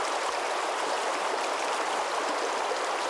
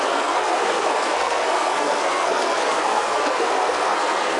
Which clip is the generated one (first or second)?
second